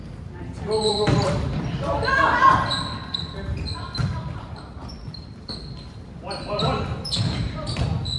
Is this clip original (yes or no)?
no